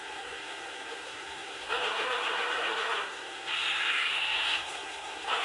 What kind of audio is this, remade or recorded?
remade